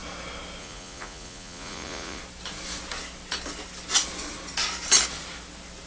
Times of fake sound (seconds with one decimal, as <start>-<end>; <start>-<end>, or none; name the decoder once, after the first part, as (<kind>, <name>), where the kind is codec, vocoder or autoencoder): 0.6-2.2 (vocoder, Vocos)